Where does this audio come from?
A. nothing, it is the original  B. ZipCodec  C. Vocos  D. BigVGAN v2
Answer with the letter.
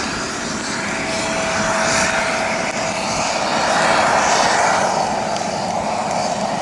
A